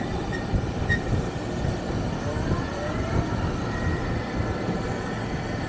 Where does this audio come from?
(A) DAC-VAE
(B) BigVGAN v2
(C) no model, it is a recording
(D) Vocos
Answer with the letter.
C